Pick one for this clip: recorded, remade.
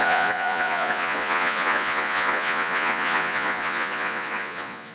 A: remade